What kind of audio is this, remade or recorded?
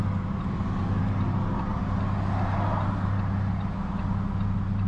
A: recorded